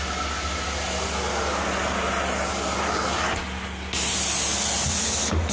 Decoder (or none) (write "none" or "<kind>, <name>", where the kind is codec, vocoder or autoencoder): none